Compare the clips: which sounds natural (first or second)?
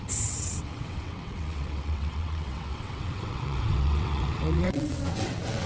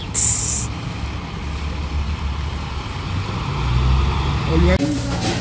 second